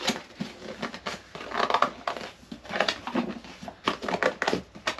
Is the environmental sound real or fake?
real